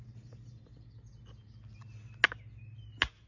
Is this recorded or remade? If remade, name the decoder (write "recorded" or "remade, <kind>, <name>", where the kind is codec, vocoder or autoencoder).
recorded